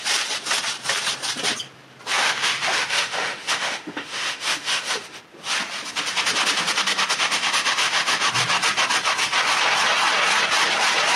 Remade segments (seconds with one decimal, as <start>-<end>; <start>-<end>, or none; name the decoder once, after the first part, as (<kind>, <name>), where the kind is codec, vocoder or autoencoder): 2.2-5.2 (autoencoder, DAC-VAE); 7.2-8.3